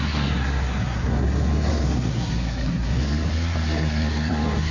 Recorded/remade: remade